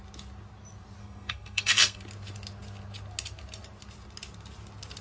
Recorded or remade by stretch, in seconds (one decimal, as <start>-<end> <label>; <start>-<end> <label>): 0.0-1.0 recorded; 1.0-2.0 remade; 2.0-5.0 recorded